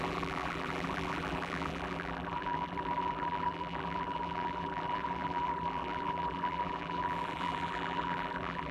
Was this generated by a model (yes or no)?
yes